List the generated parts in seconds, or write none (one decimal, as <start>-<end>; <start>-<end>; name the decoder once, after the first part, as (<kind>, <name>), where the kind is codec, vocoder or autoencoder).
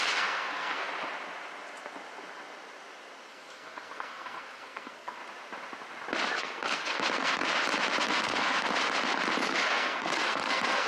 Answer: 0.0-0.9 (codec, SNAC); 3.3-5.2; 6.4-7.4; 8.0-8.7; 9.4-10.9